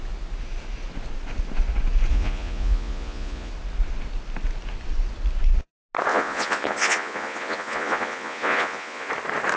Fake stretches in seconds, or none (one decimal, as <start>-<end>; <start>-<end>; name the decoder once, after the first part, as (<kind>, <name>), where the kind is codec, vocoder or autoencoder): 2.1-3.5 (vocoder, Vocos); 6.1-9.1